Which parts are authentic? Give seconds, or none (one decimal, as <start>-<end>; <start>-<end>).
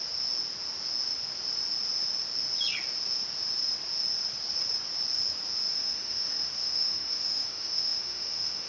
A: 0.0-5.7